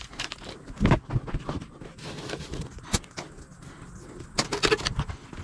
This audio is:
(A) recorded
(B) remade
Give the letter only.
A